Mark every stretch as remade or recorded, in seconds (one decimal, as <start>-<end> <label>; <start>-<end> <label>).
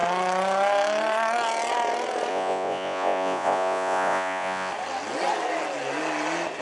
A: 0.0-2.3 recorded; 2.3-4.7 remade; 4.7-6.6 recorded